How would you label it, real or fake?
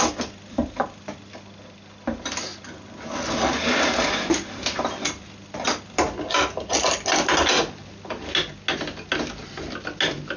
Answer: real